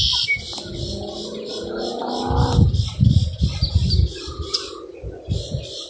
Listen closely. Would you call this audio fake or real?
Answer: real